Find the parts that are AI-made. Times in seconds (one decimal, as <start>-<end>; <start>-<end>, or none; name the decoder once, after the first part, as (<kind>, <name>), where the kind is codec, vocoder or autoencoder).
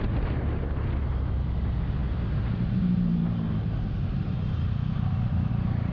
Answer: none